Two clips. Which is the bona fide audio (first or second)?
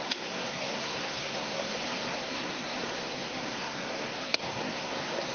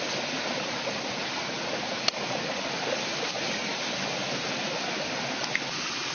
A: second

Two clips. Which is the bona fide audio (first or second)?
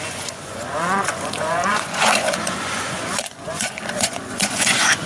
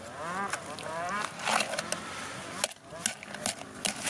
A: second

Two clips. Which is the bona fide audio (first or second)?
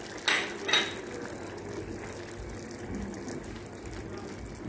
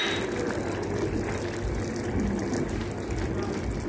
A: first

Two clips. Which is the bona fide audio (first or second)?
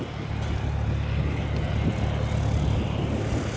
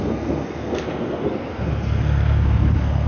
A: first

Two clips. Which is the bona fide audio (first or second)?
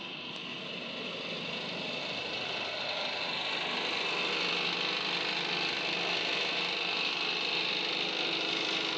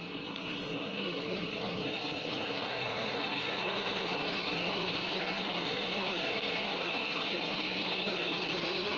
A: first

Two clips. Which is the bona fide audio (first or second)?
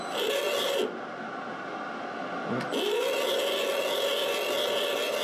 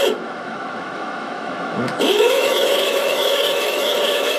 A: first